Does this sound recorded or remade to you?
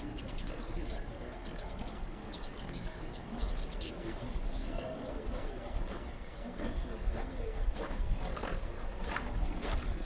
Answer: remade